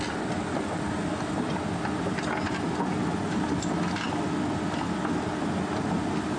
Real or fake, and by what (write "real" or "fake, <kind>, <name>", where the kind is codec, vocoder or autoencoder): real